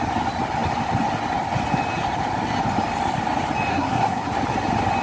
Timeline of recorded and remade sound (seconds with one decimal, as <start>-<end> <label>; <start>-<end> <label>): 0.0-3.7 recorded; 3.7-4.3 remade; 4.3-5.0 recorded